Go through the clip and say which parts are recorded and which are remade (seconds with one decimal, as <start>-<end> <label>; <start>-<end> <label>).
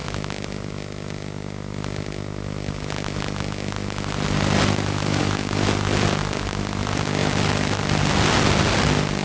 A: 0.0-9.2 recorded